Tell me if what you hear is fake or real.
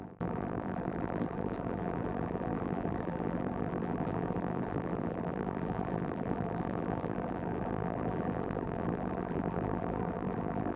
fake